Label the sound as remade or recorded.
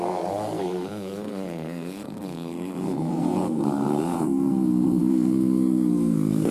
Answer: remade